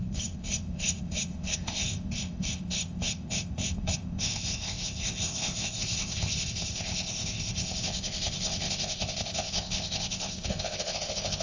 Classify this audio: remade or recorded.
remade